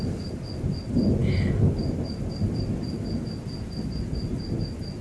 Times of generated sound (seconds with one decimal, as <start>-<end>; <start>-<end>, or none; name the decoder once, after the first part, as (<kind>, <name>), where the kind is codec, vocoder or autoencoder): none